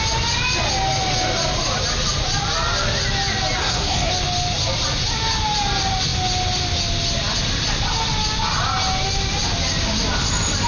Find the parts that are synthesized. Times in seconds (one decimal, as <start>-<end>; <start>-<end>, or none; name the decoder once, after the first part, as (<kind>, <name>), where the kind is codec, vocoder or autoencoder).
3.6-4.1 (codec, SNAC)